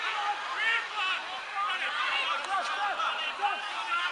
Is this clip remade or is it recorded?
recorded